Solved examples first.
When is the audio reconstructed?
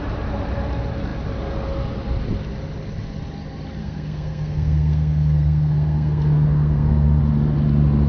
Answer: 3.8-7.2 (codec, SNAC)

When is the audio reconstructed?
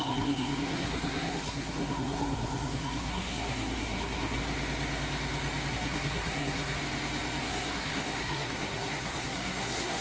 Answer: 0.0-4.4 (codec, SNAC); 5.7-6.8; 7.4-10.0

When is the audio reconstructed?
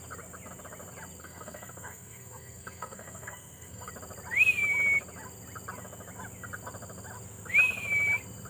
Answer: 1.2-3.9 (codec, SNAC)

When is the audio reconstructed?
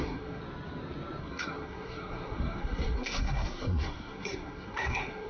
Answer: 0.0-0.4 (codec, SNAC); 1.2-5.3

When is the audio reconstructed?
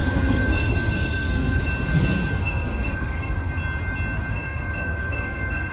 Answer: 0.0-1.6 (codec, SNAC); 2.4-3.5; 4.3-5.7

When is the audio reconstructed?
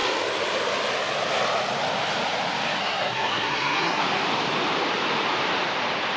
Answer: 2.8-4.0 (codec, SNAC)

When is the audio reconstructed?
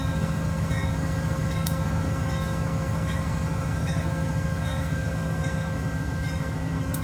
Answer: 0.0-7.0 (codec, SNAC)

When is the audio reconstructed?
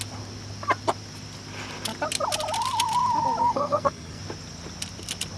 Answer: 3.4-4.2 (codec, SNAC)